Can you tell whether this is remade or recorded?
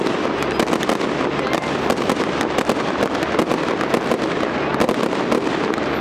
recorded